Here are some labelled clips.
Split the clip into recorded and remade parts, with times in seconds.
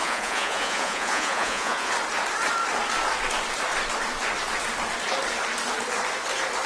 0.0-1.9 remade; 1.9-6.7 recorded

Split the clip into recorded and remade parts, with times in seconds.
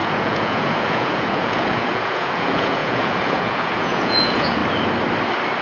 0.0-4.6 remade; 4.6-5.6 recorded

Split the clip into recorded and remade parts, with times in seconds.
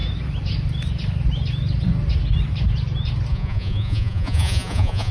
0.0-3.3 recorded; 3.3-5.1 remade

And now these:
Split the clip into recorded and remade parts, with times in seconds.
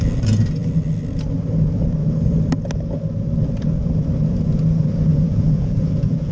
0.0-5.1 recorded; 5.1-6.3 remade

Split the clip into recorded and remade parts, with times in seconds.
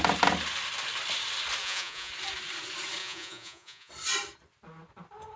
0.0-1.6 recorded; 1.6-2.1 remade; 2.1-3.0 recorded; 3.0-3.9 remade; 3.9-5.4 recorded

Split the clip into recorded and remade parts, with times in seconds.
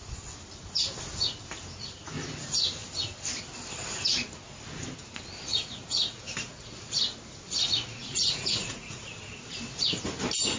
0.0-5.5 recorded; 5.5-6.6 remade; 6.6-8.0 recorded; 8.0-9.1 remade; 9.1-10.6 recorded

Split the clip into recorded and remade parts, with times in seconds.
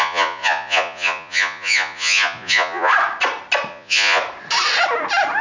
0.0-2.9 remade; 2.9-3.7 recorded; 3.7-4.2 remade; 4.2-5.4 recorded